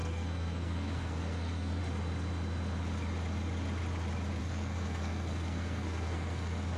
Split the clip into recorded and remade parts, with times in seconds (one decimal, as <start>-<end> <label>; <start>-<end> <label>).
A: 0.0-1.8 remade; 1.8-4.4 recorded; 4.4-6.8 remade